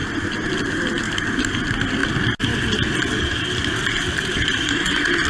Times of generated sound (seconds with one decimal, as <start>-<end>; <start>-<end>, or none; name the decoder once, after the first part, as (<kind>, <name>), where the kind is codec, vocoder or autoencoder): 0.0-2.0 (vocoder, BigVGAN v2); 3.2-5.3